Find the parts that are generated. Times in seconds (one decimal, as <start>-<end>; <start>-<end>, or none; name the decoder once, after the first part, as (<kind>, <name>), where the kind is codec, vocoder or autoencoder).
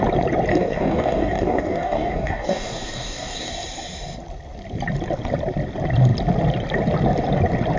0.5-3.5 (codec, DAC)